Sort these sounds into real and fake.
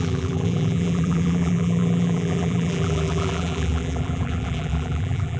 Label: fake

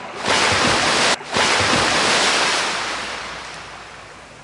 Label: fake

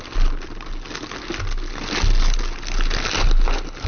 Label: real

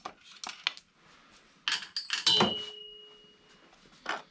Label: real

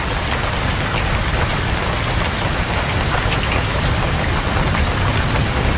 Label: real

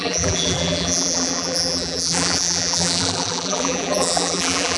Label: fake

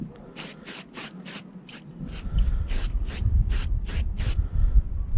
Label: fake